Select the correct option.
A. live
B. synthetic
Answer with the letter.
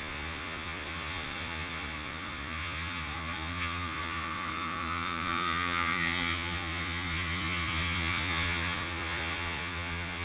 B